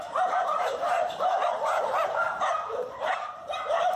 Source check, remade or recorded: remade